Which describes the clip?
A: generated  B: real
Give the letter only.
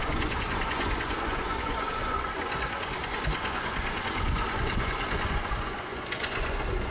A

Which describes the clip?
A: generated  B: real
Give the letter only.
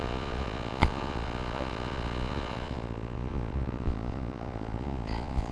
A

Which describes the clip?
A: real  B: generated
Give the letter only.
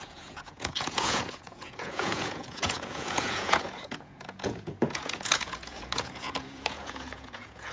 B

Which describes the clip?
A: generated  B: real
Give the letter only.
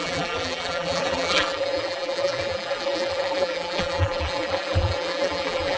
A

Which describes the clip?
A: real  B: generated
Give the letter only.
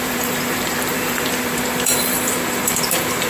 B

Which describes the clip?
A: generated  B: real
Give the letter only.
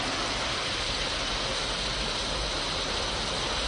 B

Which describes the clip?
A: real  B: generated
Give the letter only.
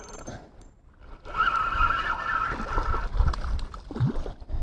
B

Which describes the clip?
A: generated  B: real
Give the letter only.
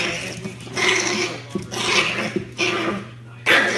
B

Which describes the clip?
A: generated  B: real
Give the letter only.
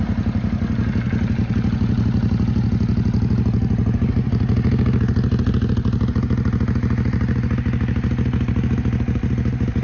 B